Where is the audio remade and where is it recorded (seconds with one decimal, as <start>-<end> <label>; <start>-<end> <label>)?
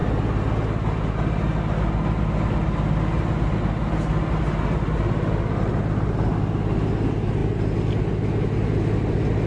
0.0-9.5 recorded